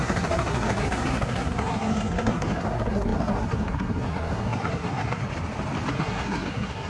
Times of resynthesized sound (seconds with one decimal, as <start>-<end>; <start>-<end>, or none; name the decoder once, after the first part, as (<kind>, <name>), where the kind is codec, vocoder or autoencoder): 0.0-5.2 (codec, SNAC); 5.9-6.9